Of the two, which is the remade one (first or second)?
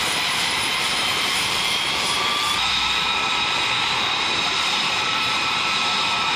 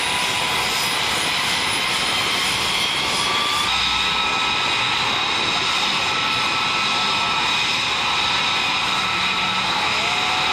first